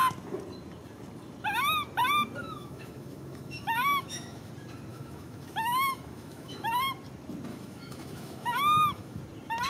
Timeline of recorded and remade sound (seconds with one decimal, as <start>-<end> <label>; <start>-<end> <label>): 0.0-2.4 recorded; 2.4-4.5 remade; 4.5-4.9 recorded; 4.9-6.7 remade; 6.7-7.5 recorded; 7.5-9.2 remade; 9.2-9.7 recorded